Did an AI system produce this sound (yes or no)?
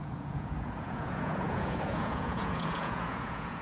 yes